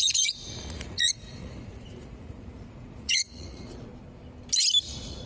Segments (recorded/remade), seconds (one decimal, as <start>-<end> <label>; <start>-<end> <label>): 0.0-3.9 remade; 3.9-4.8 recorded; 4.8-5.3 remade